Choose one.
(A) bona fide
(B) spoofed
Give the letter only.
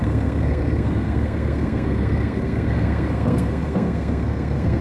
B